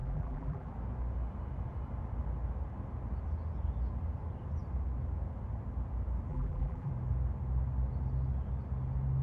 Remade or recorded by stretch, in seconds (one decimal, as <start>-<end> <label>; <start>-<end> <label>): 0.0-0.7 remade; 0.7-6.3 recorded; 6.3-6.9 remade; 6.9-9.2 recorded